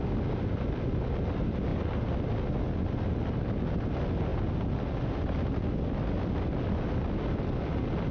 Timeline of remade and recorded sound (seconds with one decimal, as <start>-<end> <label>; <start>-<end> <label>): 0.0-8.1 recorded